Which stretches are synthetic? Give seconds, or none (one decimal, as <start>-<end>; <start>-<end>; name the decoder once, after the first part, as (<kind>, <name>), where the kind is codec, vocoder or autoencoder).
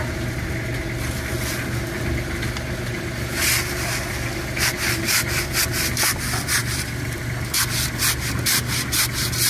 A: 6.6-7.2 (vocoder, BigVGAN v2)